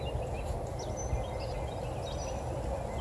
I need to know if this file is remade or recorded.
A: recorded